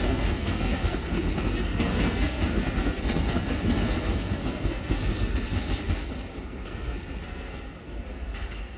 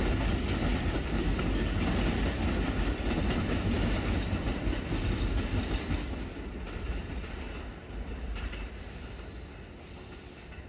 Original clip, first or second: second